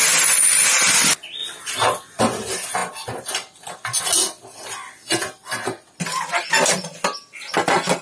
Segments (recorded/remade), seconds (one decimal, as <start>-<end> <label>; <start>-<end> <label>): 0.0-8.0 recorded